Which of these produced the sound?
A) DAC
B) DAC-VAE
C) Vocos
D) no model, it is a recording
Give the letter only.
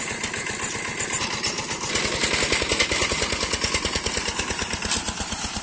D